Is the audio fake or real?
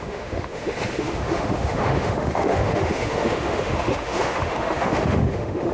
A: fake